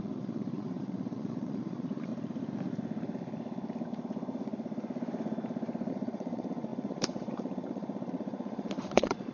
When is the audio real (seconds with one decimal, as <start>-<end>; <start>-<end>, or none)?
2.1-5.9